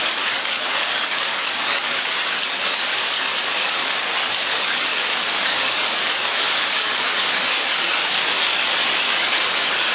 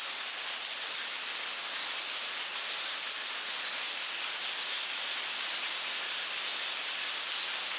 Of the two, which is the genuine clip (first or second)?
second